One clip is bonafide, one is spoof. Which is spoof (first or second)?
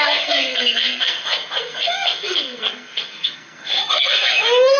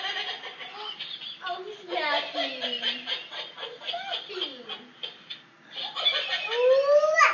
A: first